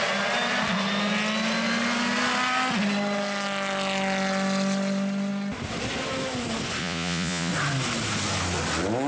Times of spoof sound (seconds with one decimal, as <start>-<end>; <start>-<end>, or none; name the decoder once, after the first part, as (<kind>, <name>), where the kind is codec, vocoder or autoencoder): 6.8-7.5 (vocoder, Vocos)